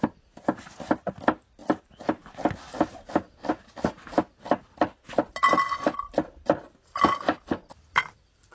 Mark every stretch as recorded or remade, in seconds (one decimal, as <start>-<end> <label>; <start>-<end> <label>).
0.0-8.5 recorded